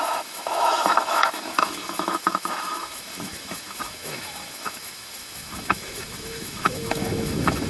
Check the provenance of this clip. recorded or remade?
remade